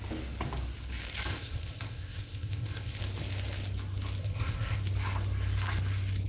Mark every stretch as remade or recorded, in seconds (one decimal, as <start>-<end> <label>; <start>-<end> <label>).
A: 0.0-1.3 recorded; 1.3-3.0 remade; 3.0-4.2 recorded; 4.2-4.8 remade; 4.8-6.3 recorded